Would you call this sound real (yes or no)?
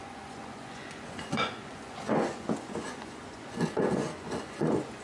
no